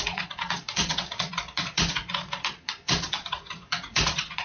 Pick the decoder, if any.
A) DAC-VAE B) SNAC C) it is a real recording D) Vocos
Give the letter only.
D